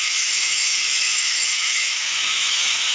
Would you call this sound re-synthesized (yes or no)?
yes